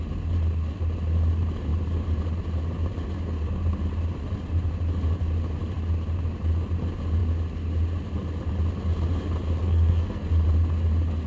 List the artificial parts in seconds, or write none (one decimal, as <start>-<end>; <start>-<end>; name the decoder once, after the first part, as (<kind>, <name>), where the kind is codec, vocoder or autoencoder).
9.6-10.3 (codec, SNAC)